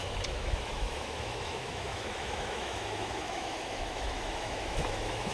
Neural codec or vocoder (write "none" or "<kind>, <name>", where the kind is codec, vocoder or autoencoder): autoencoder, DAC-VAE